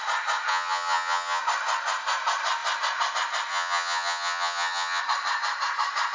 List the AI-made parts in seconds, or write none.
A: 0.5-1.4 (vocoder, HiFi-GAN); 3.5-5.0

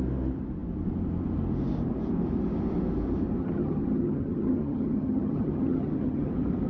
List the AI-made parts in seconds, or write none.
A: 3.4-6.3 (vocoder, HiFi-GAN)

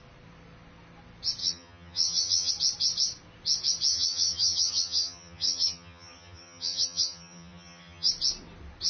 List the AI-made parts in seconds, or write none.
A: 1.4-2.5 (vocoder, HiFi-GAN); 3.9-8.1

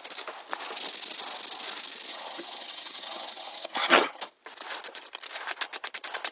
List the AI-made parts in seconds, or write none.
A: 2.1-4.2 (vocoder, HiFi-GAN)

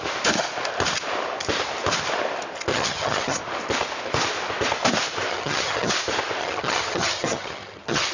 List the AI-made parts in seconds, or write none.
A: 2.7-3.4 (vocoder, HiFi-GAN); 5.3-5.9; 6.4-8.1

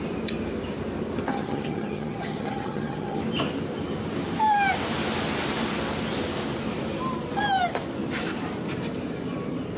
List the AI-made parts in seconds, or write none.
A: 1.3-3.2 (vocoder, HiFi-GAN)

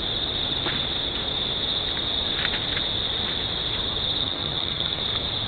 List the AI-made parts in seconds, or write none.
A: 4.2-5.0 (vocoder, HiFi-GAN)

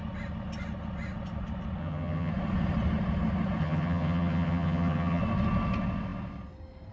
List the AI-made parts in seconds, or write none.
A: 1.8-2.3 (vocoder, HiFi-GAN); 3.6-5.2